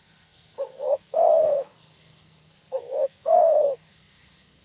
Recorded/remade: remade